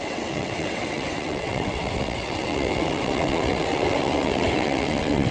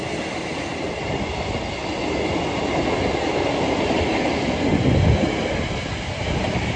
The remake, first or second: first